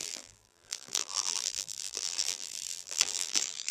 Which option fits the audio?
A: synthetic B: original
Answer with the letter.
A